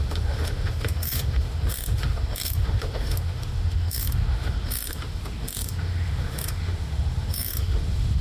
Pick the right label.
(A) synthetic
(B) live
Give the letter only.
A